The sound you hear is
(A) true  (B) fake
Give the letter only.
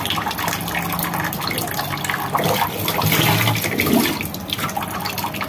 A